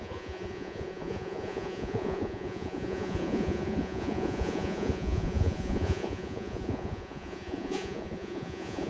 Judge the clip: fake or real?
fake